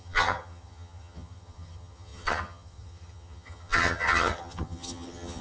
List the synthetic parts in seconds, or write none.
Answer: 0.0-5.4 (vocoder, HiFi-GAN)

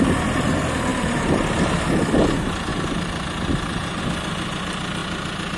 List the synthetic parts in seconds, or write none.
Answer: 0.9-1.6 (vocoder, BigVGAN v2); 2.7-4.0

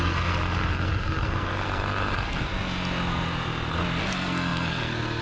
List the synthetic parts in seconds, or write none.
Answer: 0.0-2.5 (codec, SNAC); 4.0-5.2

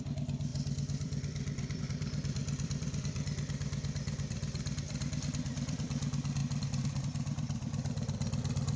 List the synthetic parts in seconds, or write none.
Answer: 0.0-8.8 (vocoder, BigVGAN v2)

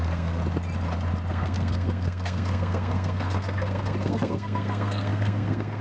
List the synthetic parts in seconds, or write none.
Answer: 0.0-0.4 (codec, SNAC); 1.3-5.8

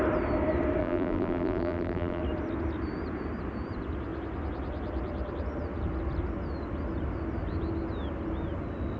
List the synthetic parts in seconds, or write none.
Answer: 0.8-2.2 (vocoder, BigVGAN v2)